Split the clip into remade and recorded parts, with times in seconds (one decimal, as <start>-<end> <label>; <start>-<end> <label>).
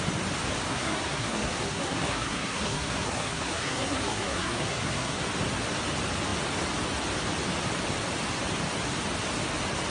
0.0-0.7 recorded; 0.7-5.2 remade; 5.2-9.9 recorded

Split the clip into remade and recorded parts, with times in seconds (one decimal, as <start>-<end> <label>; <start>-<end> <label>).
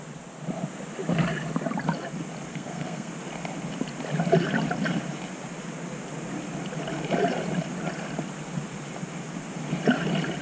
0.0-2.5 recorded; 2.5-3.1 remade; 3.1-10.4 recorded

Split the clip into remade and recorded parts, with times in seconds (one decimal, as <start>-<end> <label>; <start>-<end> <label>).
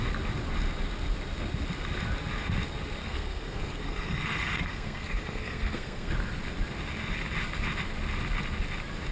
0.0-3.0 recorded; 3.0-6.1 remade; 6.1-9.1 recorded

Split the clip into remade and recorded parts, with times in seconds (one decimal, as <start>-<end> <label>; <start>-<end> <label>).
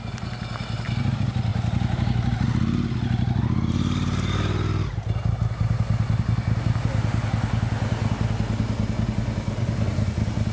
0.0-10.5 recorded